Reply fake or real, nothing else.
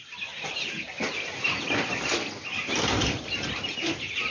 real